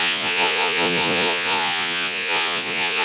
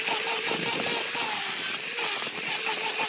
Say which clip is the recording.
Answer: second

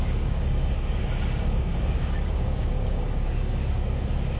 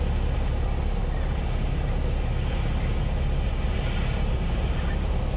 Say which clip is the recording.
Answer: second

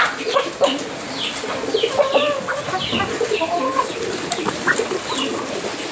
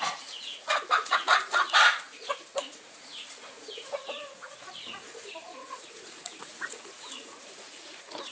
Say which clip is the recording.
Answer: first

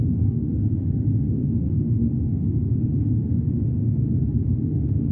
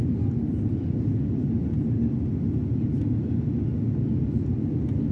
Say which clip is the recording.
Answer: second